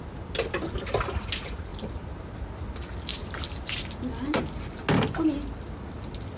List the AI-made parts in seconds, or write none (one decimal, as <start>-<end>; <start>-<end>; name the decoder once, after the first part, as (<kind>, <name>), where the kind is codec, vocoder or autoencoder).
1.7-2.3 (vocoder, BigVGAN v2); 3.1-4.4